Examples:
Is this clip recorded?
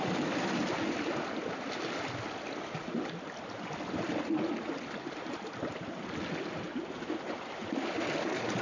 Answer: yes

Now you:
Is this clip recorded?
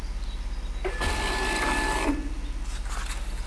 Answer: yes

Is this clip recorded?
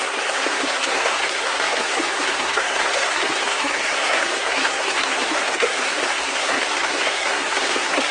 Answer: no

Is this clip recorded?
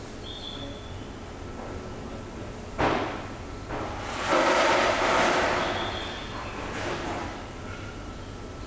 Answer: yes